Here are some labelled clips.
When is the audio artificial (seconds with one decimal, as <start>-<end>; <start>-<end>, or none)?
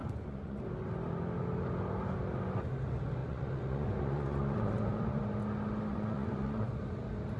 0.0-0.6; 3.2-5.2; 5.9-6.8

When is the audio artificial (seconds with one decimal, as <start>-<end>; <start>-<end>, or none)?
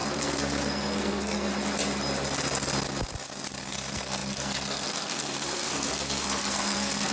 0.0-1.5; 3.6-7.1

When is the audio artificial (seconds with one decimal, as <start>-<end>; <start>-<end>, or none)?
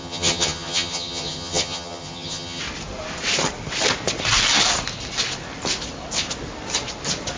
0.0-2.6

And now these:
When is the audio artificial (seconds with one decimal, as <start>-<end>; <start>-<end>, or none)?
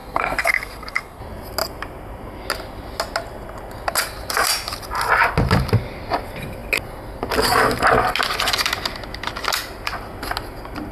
0.0-1.2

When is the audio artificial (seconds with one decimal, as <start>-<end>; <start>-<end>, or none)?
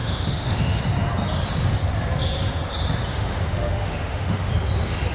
0.0-0.8; 3.1-4.5